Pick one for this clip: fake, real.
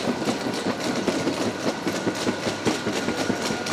real